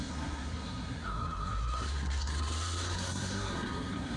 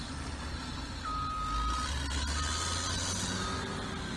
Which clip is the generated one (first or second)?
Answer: first